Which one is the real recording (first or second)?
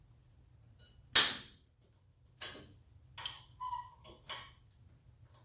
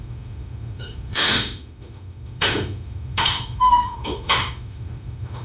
first